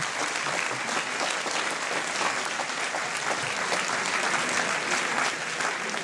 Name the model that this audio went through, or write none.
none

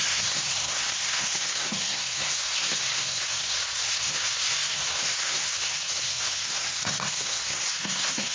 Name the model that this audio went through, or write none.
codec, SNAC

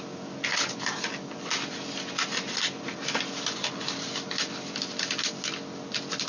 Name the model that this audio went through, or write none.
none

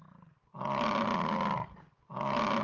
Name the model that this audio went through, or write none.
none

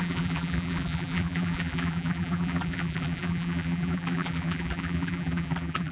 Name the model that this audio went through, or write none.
vocoder, BigVGAN v2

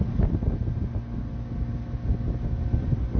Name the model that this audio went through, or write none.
none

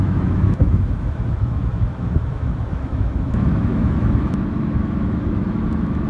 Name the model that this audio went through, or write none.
autoencoder, DAC-VAE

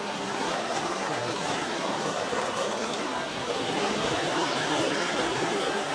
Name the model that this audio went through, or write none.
codec, SNAC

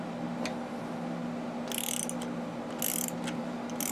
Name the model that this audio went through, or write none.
none